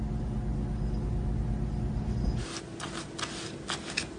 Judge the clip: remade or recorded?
recorded